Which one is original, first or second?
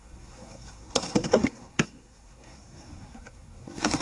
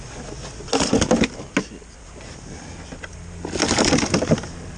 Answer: second